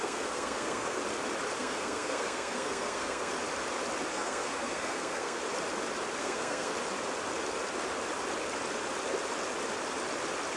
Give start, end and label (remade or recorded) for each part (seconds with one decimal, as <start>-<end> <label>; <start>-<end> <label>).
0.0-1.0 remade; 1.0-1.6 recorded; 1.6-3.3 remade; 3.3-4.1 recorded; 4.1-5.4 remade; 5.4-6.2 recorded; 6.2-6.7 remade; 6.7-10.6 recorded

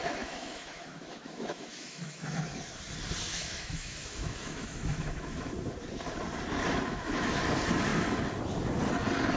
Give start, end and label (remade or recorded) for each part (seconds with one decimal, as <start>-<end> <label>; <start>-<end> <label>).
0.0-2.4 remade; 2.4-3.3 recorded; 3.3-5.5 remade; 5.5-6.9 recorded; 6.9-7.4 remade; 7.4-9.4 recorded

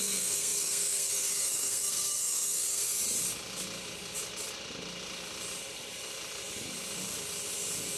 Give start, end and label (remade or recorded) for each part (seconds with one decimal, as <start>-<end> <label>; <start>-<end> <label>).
0.0-2.9 remade; 2.9-8.0 recorded

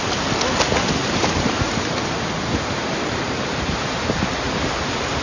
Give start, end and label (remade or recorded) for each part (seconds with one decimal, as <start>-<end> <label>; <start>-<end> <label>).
0.0-1.0 recorded; 1.0-4.1 remade; 4.1-5.2 recorded

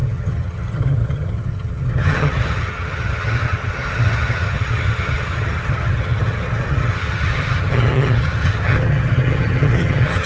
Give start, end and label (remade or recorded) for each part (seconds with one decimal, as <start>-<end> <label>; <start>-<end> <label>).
0.0-10.3 remade

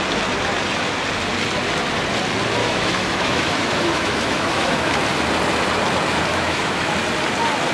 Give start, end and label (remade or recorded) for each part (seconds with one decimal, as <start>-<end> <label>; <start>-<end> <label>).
0.0-2.6 recorded; 2.6-5.0 remade; 5.0-6.3 recorded; 6.3-6.9 remade; 6.9-7.7 recorded

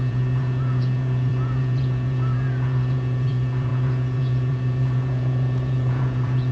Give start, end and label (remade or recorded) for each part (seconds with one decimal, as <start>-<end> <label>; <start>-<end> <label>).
0.0-6.5 remade

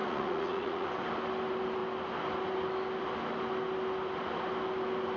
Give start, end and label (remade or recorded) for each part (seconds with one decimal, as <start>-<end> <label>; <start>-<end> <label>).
0.0-0.9 remade; 0.9-5.2 recorded